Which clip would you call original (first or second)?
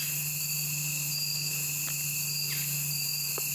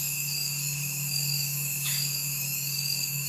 first